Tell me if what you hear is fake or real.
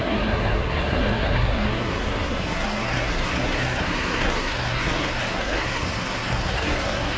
fake